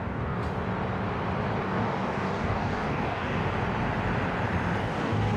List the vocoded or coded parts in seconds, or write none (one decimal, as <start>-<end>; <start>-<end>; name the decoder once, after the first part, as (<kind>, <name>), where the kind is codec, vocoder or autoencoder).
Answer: 0.0-0.4 (codec, DAC); 1.6-3.4; 4.8-5.4